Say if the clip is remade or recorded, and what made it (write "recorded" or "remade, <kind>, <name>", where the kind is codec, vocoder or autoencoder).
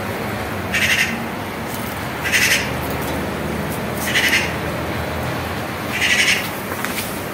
recorded